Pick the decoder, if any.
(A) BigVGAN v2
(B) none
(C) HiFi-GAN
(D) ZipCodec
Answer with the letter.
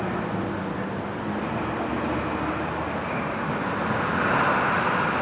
B